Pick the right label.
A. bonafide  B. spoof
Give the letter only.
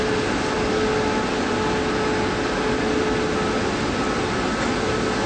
A